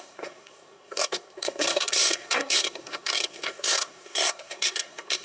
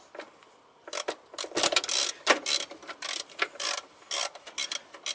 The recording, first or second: second